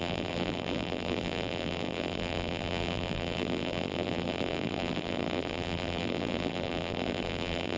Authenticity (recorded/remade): remade